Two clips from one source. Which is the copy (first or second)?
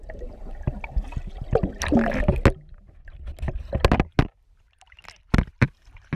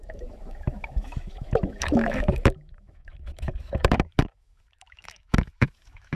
second